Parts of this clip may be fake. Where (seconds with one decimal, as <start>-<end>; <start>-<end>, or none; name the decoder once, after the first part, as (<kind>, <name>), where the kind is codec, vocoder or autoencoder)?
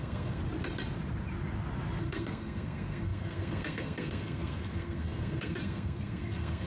0.0-0.4 (codec, SNAC); 2.0-6.7